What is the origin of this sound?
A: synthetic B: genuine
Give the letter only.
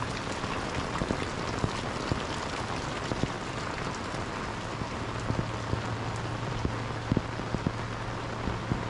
B